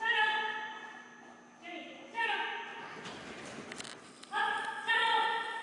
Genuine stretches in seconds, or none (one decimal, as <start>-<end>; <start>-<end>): 0.0-5.6